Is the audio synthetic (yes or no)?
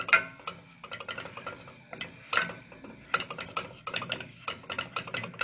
no